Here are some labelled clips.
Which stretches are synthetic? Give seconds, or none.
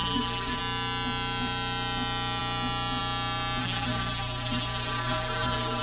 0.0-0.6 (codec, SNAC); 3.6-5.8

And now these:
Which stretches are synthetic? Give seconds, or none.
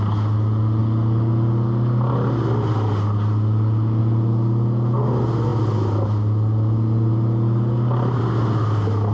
none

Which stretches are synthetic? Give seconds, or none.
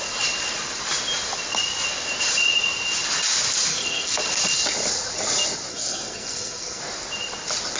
3.7-4.2 (codec, SNAC); 5.7-6.8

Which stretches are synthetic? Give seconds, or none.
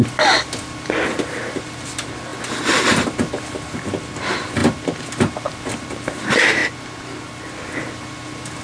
none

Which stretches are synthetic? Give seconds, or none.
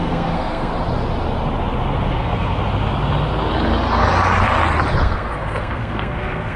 0.0-0.7 (codec, SNAC); 2.1-2.6; 5.0-6.6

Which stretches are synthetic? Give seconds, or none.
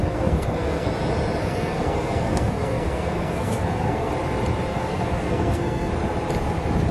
0.0-0.9 (codec, SNAC); 1.4-4.1; 4.7-5.9